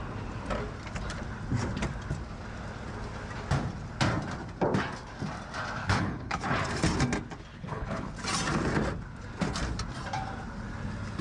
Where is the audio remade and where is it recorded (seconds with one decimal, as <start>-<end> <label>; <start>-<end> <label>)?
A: 0.0-5.8 recorded; 5.8-6.4 remade; 6.4-7.5 recorded; 7.5-8.1 remade; 8.1-11.2 recorded